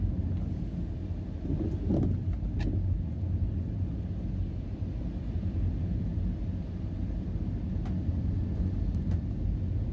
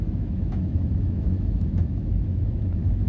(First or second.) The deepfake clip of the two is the second